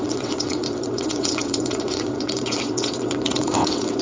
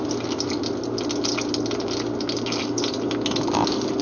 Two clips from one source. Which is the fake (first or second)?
first